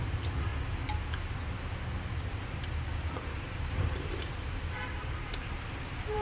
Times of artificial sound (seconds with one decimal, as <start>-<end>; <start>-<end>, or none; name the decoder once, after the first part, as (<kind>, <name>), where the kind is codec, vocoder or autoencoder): 0.0-0.5 (vocoder, BigVGAN v2); 2.2-6.2

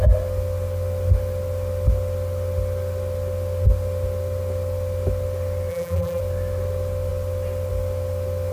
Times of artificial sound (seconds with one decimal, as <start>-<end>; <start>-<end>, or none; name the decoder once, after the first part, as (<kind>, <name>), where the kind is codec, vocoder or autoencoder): 5.7-6.2 (vocoder, BigVGAN v2)

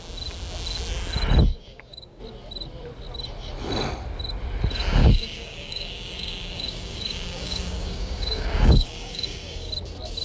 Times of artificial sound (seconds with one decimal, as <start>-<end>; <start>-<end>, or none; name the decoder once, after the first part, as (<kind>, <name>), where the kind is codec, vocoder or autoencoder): 1.5-2.2 (codec, DAC); 5.0-9.7

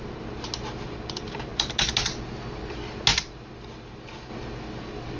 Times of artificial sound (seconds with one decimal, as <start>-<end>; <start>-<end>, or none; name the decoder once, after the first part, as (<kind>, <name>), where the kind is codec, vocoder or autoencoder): none

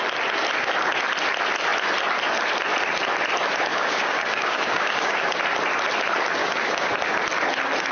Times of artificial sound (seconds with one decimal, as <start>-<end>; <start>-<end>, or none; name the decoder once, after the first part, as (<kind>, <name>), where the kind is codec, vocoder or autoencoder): 3.7-5.2 (codec, DAC); 6.4-6.9

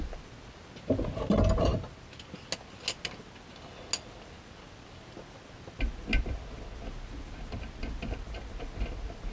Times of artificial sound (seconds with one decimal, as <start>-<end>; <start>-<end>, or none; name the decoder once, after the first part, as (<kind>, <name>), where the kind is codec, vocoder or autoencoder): none

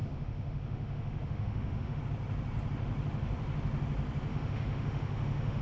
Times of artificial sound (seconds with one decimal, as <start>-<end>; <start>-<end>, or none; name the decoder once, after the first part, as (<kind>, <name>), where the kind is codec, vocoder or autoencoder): 0.0-2.0 (autoencoder, DAC-VAE); 4.3-5.6